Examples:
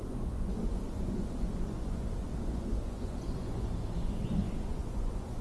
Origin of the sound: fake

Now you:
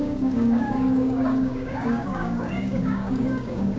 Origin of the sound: fake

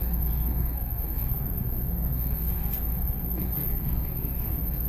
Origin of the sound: fake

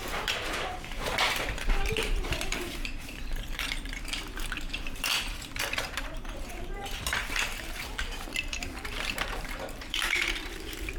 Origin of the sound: fake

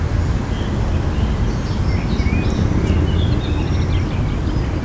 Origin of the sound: real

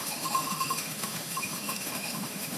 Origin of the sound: fake